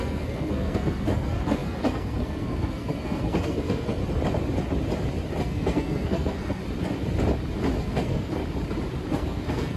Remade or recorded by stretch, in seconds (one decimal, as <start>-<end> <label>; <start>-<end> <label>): 0.0-4.0 remade; 4.0-5.4 recorded; 5.4-6.6 remade; 6.6-7.8 recorded; 7.8-8.4 remade; 8.4-9.1 recorded; 9.1-9.8 remade